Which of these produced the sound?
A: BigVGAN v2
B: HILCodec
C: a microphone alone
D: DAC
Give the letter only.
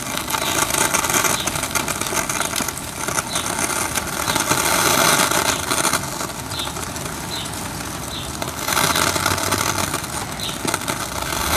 C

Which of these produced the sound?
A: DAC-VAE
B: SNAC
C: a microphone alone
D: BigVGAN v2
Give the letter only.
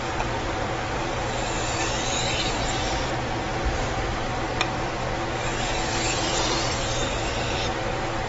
D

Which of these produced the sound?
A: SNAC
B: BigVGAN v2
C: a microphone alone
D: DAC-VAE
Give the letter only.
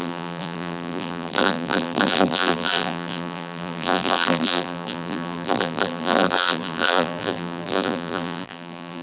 B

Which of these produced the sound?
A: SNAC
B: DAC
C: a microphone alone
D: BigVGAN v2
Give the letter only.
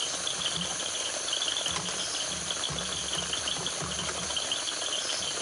D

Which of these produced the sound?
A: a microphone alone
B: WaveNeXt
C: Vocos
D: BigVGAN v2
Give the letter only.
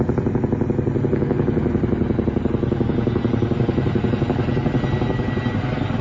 A